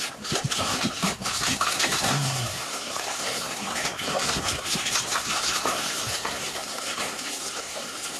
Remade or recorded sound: remade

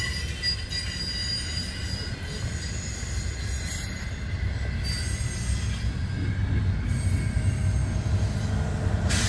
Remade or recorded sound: recorded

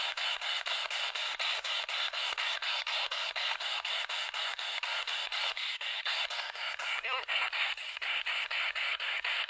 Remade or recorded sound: remade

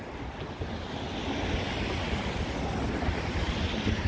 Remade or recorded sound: recorded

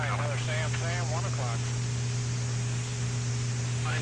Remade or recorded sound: recorded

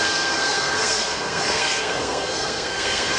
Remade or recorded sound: remade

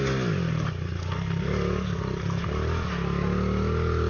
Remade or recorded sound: recorded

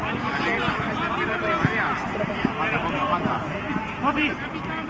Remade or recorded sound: recorded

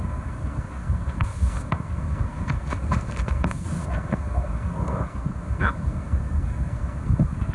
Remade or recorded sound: remade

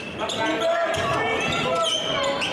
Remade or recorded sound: recorded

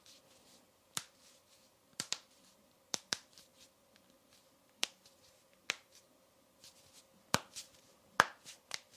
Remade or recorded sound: recorded